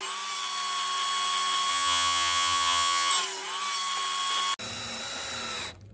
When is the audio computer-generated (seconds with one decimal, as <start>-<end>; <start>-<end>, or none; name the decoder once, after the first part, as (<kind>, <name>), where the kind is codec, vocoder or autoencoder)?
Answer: 1.7-3.1 (vocoder, HiFi-GAN)